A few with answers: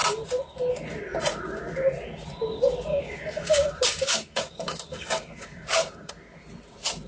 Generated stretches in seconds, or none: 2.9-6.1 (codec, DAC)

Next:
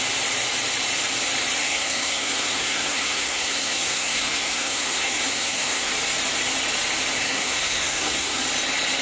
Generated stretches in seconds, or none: 1.6-5.9 (codec, SNAC); 7.2-8.4

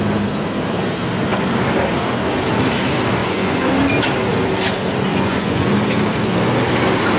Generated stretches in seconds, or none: 3.2-3.7 (vocoder, Vocos); 5.1-5.7

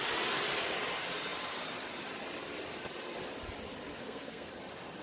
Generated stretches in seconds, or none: 3.9-4.5 (codec, SNAC)

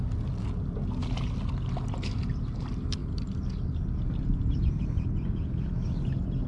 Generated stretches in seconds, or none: none

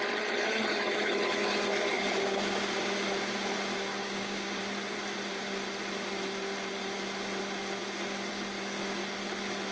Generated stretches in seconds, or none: 4.0-4.6 (codec, DAC)